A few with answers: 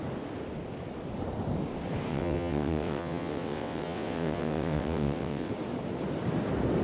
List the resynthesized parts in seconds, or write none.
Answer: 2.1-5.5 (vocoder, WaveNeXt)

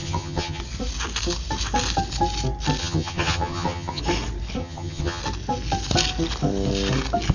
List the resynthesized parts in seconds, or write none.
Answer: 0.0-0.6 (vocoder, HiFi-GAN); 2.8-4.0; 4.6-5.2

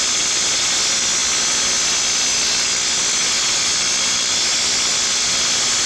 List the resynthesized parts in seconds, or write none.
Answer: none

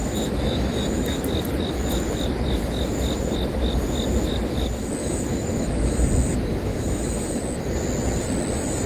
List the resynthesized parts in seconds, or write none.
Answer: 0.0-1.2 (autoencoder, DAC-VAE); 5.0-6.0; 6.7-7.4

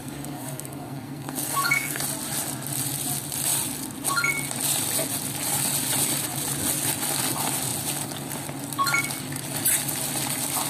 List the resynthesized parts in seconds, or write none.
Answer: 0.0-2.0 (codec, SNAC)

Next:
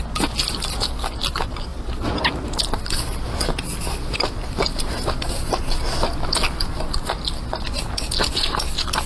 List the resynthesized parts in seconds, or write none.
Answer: 1.7-6.3 (vocoder, BigVGAN v2)

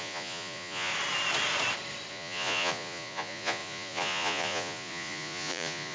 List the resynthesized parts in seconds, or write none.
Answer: 0.0-0.9 (vocoder, Vocos); 2.1-5.9